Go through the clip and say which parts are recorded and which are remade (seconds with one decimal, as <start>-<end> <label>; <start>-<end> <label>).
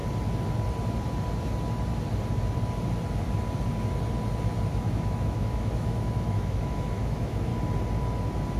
0.0-4.7 recorded; 4.7-7.5 remade; 7.5-8.6 recorded